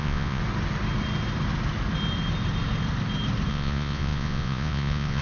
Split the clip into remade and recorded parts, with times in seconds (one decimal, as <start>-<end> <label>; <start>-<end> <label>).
0.0-0.4 remade; 0.4-3.5 recorded; 3.5-5.2 remade